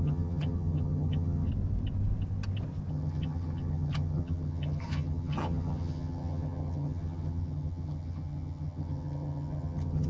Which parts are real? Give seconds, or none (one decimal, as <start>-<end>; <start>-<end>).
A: 1.5-2.9